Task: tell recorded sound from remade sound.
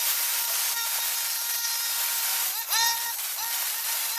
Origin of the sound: remade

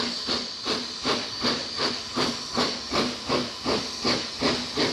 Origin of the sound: recorded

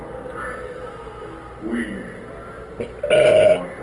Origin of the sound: recorded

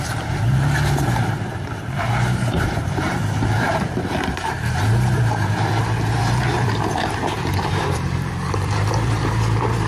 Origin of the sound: remade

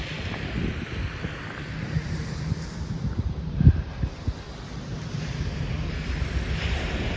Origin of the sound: remade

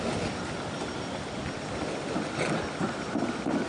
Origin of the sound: recorded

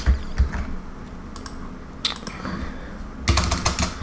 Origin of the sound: recorded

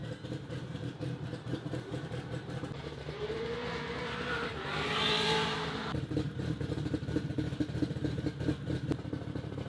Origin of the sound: remade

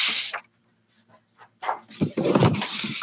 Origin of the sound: remade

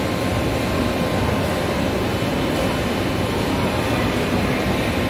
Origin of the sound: remade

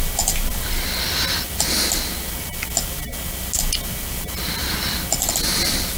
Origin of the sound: recorded